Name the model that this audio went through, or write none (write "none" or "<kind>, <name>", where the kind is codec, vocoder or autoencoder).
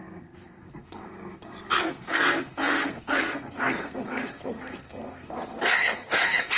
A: codec, SNAC